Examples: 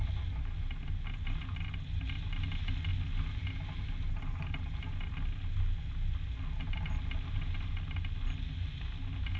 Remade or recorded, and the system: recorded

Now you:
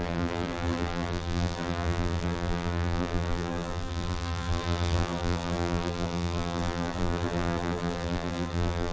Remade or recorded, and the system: remade, vocoder, BigVGAN v2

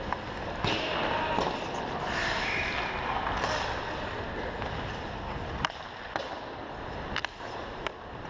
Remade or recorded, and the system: recorded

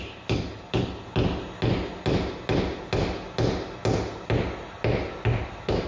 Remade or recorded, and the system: recorded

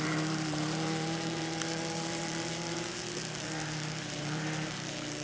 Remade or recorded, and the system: remade, vocoder, BigVGAN v2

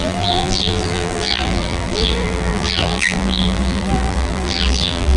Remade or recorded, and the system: remade, vocoder, BigVGAN v2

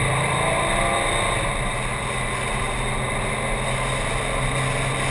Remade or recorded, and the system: recorded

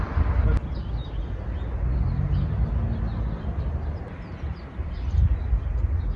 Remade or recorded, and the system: recorded